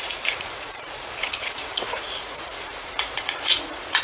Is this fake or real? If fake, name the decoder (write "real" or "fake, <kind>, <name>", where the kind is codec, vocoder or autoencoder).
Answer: fake, vocoder, Vocos